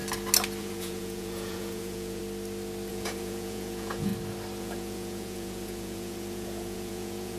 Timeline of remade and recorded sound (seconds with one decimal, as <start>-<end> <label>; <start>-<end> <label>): 0.0-0.6 recorded; 0.6-2.2 remade; 2.2-2.9 recorded; 2.9-4.1 remade; 4.1-4.6 recorded; 4.6-7.4 remade